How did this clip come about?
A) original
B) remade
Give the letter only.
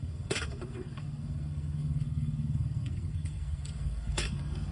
B